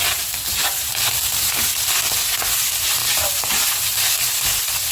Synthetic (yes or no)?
no